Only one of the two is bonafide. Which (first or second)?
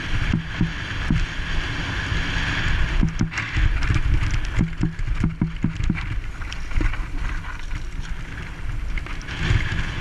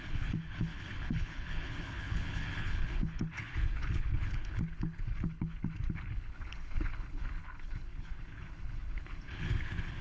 first